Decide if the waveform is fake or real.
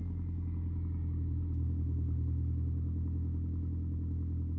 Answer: real